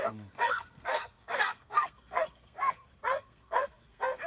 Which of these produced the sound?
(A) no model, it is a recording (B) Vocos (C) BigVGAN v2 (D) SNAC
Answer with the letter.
D